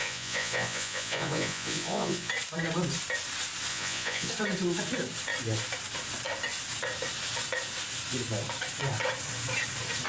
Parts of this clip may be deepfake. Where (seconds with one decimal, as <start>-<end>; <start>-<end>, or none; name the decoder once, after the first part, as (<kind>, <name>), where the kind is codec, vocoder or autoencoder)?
0.0-2.3 (vocoder, Vocos); 3.7-4.3